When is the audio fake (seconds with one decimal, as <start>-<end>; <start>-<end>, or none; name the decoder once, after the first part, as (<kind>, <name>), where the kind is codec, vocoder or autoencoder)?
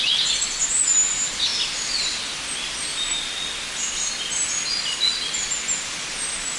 none